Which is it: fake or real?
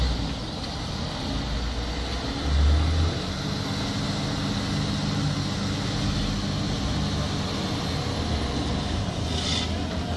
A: real